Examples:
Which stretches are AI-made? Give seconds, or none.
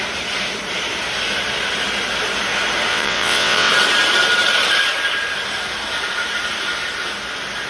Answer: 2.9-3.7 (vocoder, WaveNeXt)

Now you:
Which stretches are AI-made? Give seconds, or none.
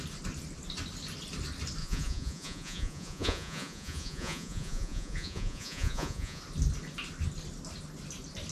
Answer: 1.8-6.4 (vocoder, Vocos)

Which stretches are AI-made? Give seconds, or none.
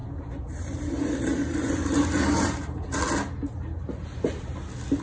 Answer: 0.0-3.0 (vocoder, BigVGAN v2); 4.0-4.5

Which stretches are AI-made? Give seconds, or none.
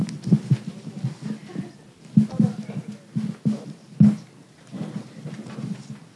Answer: 1.4-2.8 (vocoder, BigVGAN v2)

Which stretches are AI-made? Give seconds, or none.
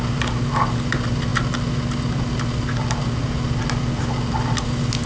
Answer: none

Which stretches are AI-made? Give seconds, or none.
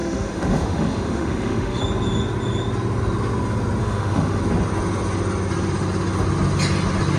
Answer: 0.0-1.8 (autoencoder, DAC-VAE); 3.8-4.4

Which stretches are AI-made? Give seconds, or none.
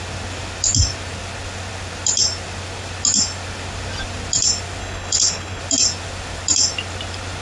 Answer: 4.8-5.6 (codec, HILCodec)